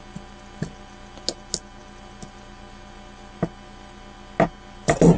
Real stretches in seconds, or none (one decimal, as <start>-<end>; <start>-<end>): 0.0-5.2